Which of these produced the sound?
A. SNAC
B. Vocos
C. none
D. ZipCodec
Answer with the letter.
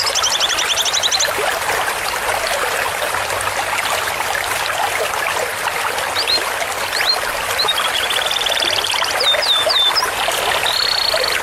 C